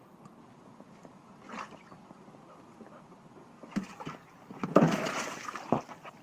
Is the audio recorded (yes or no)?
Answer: yes